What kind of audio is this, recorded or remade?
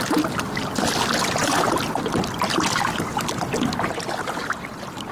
recorded